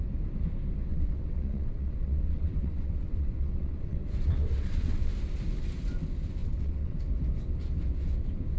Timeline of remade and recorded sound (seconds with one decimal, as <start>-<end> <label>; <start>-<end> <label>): 0.0-0.9 recorded; 0.9-5.1 remade; 5.1-6.4 recorded; 6.4-7.0 remade; 7.0-8.6 recorded

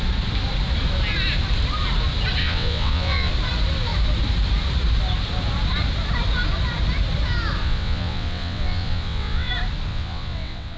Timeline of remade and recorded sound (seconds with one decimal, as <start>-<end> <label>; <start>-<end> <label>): 0.0-2.4 recorded; 2.4-3.3 remade; 3.3-7.6 recorded; 7.6-9.5 remade; 9.5-9.9 recorded; 9.9-10.8 remade

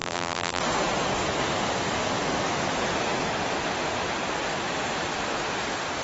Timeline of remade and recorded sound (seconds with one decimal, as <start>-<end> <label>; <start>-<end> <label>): 0.0-0.6 remade; 0.6-6.0 recorded

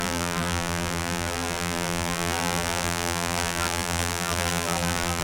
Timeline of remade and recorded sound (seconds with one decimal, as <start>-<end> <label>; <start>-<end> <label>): 0.0-5.2 remade

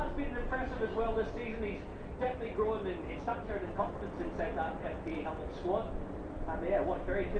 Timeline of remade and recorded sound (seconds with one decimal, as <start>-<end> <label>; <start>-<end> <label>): 0.0-7.4 recorded